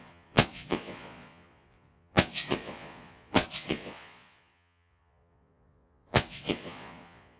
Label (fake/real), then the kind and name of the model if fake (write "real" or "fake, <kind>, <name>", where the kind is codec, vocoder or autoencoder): fake, vocoder, Vocos